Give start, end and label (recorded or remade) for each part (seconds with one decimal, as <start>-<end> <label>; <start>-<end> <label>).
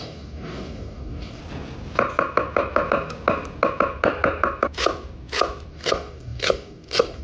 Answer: 0.0-1.4 remade; 1.4-5.7 recorded; 5.7-7.2 remade